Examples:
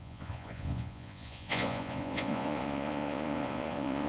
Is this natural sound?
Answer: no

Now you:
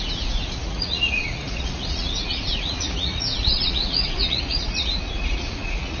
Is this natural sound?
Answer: no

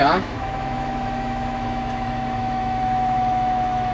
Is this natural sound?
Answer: no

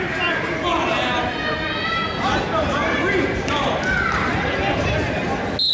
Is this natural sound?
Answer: yes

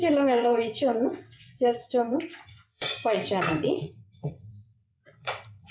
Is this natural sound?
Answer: no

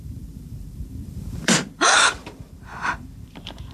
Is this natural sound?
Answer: no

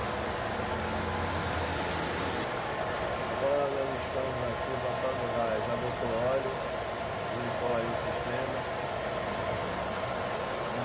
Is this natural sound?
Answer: yes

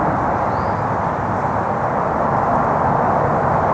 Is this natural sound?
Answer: no